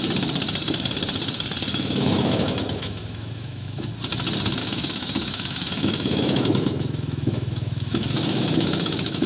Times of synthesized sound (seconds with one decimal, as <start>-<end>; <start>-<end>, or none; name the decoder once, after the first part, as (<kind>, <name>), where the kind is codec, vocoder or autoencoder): 1.7-3.9 (autoencoder, DAC-VAE); 4.6-9.3